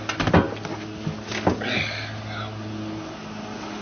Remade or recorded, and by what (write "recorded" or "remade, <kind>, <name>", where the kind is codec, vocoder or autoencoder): recorded